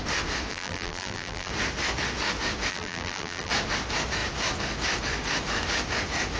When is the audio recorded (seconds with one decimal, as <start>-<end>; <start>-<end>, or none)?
0.0-0.5; 1.5-2.7; 3.5-6.4